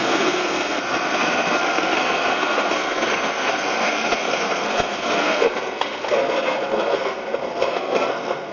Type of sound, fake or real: fake